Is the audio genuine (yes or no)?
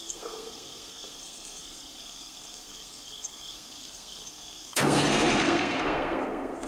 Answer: no